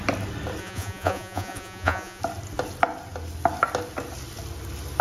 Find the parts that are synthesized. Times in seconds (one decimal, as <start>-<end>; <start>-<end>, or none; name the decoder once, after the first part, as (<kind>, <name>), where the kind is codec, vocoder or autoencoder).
0.6-2.2 (vocoder, Vocos)